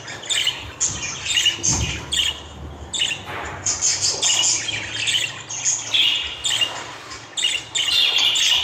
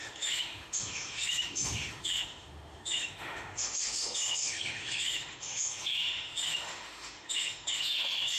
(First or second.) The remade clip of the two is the second